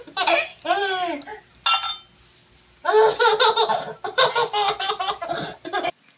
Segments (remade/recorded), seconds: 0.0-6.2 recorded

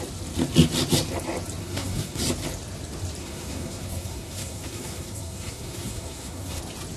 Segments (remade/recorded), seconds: 0.0-1.6 recorded; 1.6-2.2 remade; 2.2-3.2 recorded; 3.2-6.6 remade; 6.6-7.0 recorded

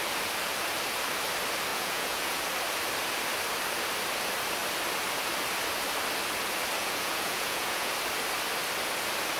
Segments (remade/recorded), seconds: 0.0-1.7 recorded; 1.7-2.4 remade; 2.4-6.8 recorded; 6.8-7.9 remade; 7.9-9.4 recorded